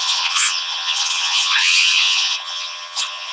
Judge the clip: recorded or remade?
remade